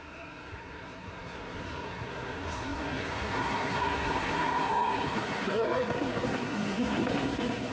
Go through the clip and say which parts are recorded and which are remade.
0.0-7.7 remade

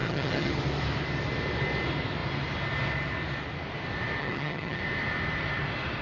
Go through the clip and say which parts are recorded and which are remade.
0.0-0.5 remade; 0.5-4.2 recorded; 4.2-4.8 remade; 4.8-6.0 recorded

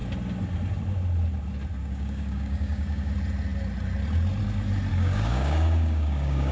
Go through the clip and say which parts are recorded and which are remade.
0.0-1.8 recorded; 1.8-3.1 remade; 3.1-4.9 recorded; 4.9-6.5 remade

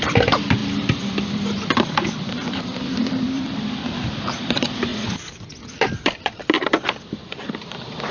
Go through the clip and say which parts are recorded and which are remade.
0.0-4.9 remade; 4.9-5.6 recorded; 5.6-8.1 remade

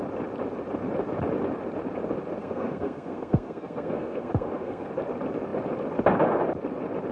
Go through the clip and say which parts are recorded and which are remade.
0.0-2.4 recorded; 2.4-4.9 remade; 4.9-7.1 recorded